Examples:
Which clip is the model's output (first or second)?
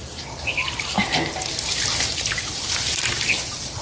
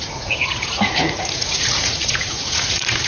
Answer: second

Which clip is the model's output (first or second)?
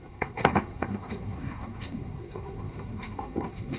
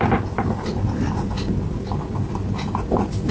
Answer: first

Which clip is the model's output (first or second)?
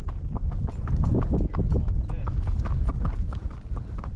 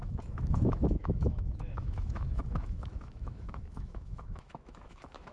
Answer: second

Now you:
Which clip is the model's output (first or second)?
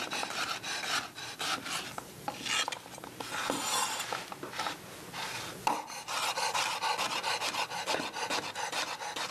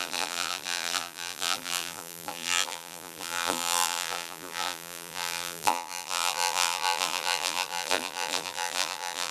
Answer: second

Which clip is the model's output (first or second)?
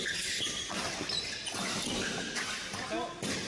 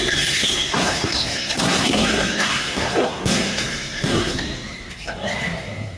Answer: second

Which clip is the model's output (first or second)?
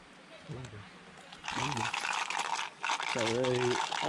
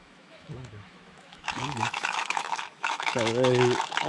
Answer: second